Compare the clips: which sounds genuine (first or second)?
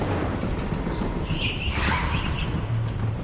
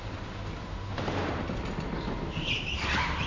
second